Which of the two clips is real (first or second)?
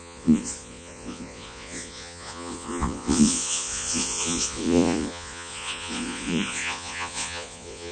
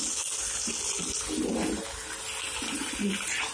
second